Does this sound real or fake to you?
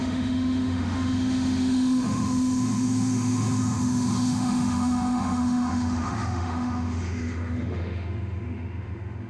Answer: fake